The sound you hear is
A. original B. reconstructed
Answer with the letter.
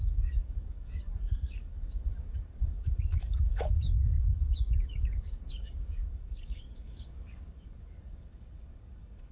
B